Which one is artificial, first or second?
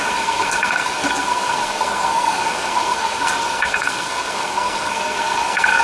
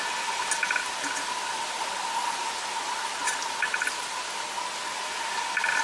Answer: first